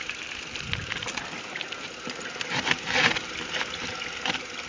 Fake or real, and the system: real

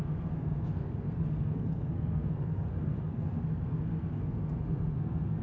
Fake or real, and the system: fake, codec, SNAC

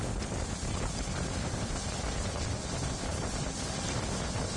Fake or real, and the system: real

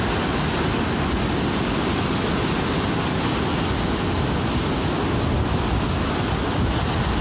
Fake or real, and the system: real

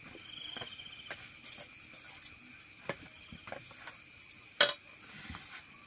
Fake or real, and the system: real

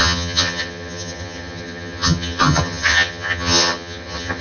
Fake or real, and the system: fake, vocoder, HiFi-GAN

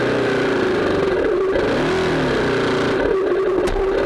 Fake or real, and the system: real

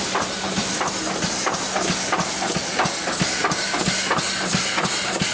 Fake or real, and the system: real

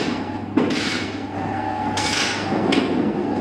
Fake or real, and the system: fake, codec, SNAC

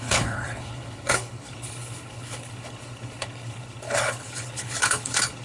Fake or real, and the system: fake, codec, HILCodec